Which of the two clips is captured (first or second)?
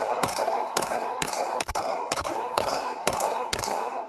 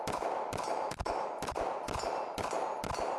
second